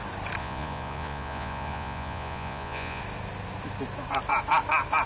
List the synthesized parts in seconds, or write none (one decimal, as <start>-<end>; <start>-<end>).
0.4-3.0